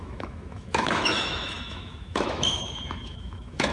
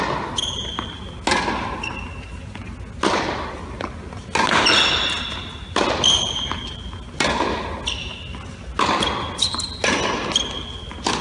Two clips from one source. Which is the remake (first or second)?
first